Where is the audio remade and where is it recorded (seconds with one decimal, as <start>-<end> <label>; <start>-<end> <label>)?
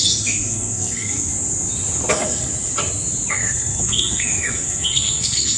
0.0-1.3 remade; 1.3-2.1 recorded; 2.1-2.5 remade; 2.5-3.3 recorded; 3.3-5.6 remade